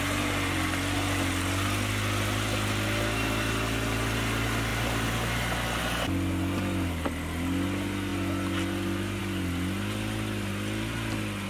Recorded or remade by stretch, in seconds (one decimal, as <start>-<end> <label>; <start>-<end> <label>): 0.0-11.5 recorded